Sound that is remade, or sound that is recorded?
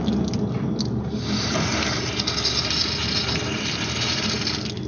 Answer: recorded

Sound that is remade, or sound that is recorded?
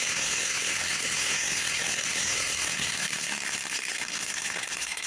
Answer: remade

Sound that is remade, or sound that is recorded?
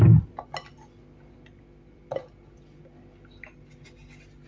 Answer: recorded